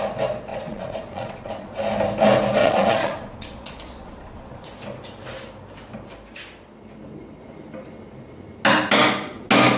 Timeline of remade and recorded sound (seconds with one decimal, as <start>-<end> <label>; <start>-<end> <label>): 0.0-0.5 recorded; 0.5-1.7 remade; 1.7-2.6 recorded; 2.6-4.7 remade; 4.7-9.8 recorded